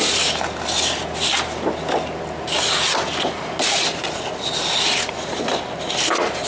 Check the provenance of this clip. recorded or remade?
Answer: recorded